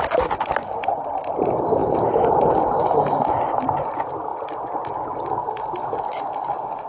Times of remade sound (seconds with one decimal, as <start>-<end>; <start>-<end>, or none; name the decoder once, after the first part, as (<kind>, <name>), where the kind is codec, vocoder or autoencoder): none